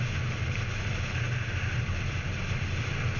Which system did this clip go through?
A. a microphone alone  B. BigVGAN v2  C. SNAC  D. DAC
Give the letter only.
A